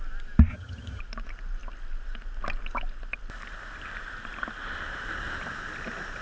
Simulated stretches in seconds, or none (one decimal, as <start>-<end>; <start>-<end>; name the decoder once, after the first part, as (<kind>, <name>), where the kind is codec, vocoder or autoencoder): 0.5-1.0 (vocoder, HiFi-GAN)